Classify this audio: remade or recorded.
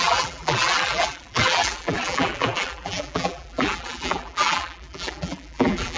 remade